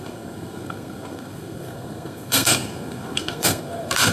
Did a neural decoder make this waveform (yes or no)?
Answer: yes